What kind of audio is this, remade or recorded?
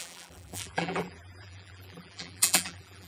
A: remade